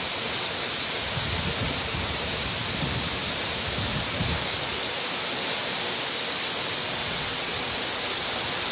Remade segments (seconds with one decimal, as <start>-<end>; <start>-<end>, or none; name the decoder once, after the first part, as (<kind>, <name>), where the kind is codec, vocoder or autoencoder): 7.0-7.6 (vocoder, WaveNeXt)